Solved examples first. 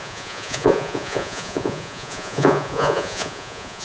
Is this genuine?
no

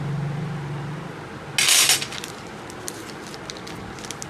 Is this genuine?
yes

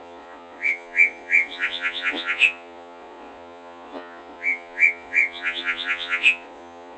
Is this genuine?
no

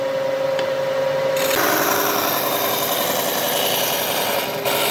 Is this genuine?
yes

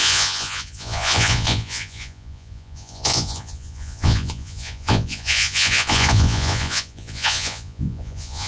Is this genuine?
no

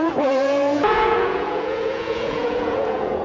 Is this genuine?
no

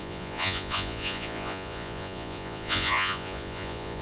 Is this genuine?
no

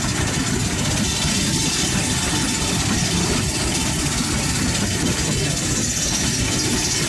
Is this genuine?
yes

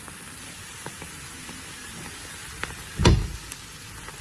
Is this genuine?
yes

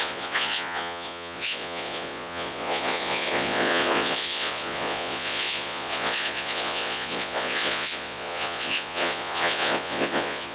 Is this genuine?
no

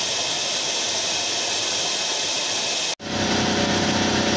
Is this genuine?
yes